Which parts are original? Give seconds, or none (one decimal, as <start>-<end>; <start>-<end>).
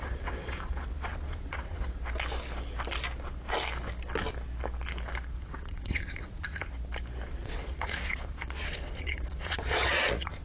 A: 2.0-5.3; 6.7-7.3